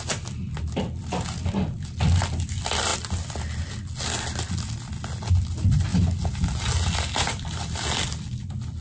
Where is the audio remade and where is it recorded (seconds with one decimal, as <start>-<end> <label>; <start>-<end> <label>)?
0.0-8.8 recorded